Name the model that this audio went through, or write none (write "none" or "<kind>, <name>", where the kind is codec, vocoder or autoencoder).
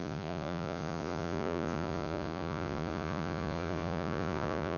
vocoder, Vocos